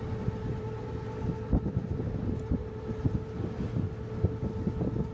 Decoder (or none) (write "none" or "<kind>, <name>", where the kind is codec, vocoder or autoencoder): none